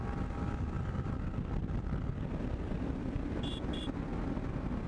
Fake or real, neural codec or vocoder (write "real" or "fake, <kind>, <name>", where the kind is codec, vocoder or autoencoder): real